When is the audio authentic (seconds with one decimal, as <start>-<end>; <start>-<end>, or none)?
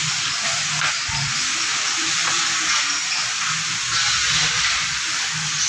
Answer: 0.0-1.7; 2.5-4.4; 5.1-5.7